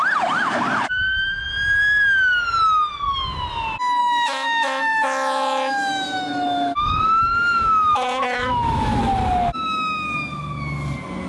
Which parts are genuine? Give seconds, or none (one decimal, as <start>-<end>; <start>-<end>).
0.0-4.0; 9.0-11.3